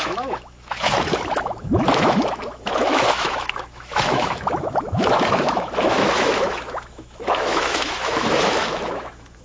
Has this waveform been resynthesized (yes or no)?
yes